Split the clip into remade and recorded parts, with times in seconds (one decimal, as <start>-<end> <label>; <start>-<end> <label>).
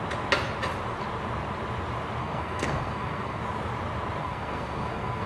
0.0-2.2 recorded; 2.2-3.4 remade; 3.4-4.2 recorded; 4.2-5.3 remade